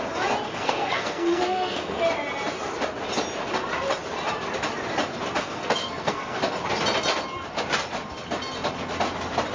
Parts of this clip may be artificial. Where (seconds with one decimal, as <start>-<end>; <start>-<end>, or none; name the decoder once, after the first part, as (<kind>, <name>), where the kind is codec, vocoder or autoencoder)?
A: 0.5-2.0 (codec, SNAC); 5.4-6.4